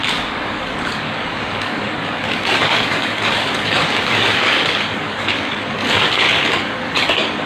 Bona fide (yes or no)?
no